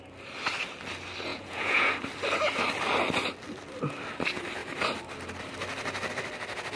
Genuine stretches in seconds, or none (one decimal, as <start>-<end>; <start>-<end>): 0.0-1.3; 1.9-6.8